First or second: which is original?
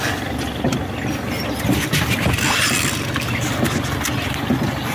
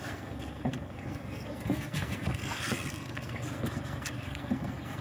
first